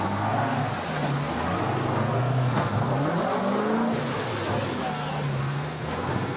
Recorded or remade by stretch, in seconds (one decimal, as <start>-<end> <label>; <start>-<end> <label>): 0.0-0.7 remade; 0.7-2.2 recorded; 2.2-2.9 remade; 2.9-5.4 recorded; 5.4-6.4 remade